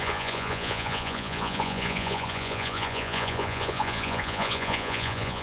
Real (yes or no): no